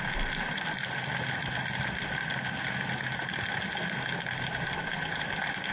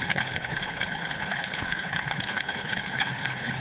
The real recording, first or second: first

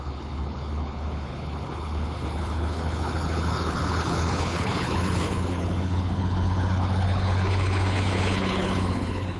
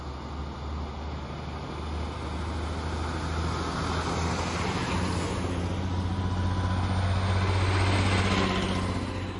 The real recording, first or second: second